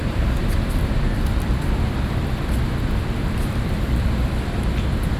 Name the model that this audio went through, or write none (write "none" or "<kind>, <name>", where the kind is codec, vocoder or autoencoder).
vocoder, BigVGAN v2